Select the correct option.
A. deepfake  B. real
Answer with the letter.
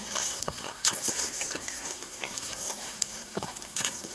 A